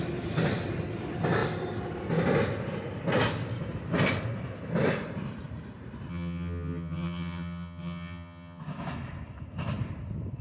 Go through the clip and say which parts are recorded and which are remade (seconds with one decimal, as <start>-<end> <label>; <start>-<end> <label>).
0.0-6.1 recorded; 6.1-8.6 remade; 8.6-10.4 recorded